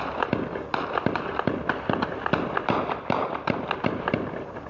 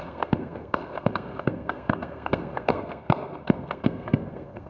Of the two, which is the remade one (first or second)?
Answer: second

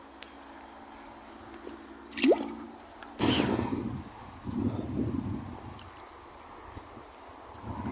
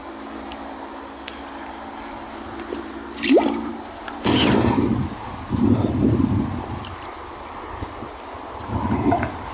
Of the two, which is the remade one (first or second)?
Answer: second